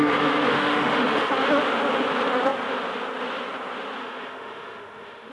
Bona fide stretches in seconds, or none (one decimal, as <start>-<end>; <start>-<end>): 0.0-0.5; 1.3-4.0